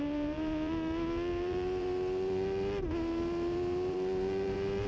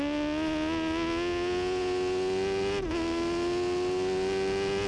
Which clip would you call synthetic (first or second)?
first